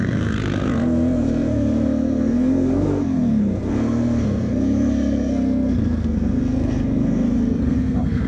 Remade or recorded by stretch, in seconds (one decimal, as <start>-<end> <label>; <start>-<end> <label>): 0.0-8.3 remade